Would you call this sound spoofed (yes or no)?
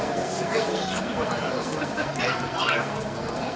yes